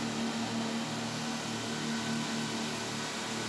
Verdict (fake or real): real